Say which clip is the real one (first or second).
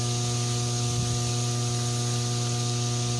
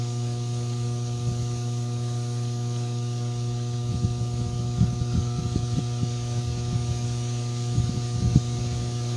first